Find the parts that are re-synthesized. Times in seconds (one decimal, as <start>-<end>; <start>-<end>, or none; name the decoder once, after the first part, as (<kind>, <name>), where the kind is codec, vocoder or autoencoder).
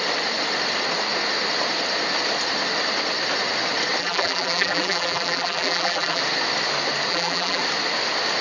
4.0-6.2 (vocoder, BigVGAN v2); 7.1-7.6